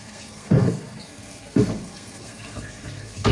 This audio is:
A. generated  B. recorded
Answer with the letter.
A